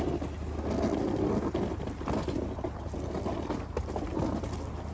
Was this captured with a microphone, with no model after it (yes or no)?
yes